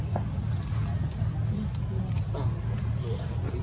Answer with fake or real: real